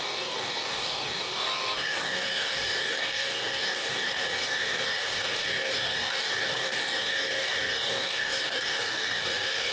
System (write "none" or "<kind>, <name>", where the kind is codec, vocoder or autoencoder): codec, DAC